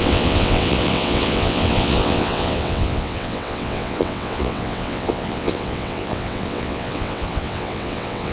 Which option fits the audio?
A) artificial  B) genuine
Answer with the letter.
A